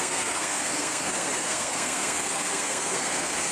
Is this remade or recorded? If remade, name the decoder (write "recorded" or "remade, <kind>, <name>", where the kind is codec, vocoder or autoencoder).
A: remade, codec, SNAC